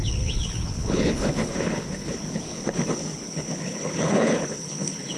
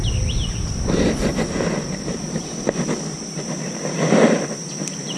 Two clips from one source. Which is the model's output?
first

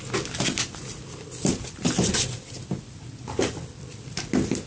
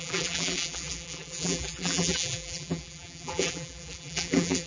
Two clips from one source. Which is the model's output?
second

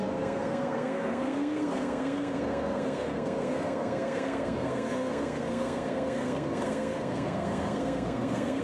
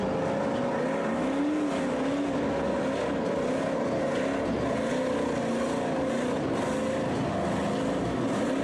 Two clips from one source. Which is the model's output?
first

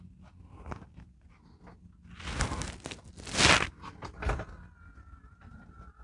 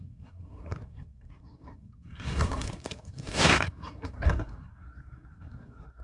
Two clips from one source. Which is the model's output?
second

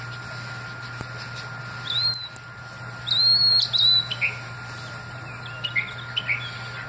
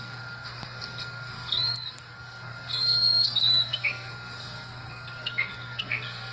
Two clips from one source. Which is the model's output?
second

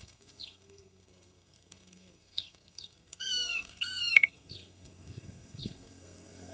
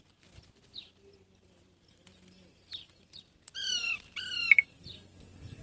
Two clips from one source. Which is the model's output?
first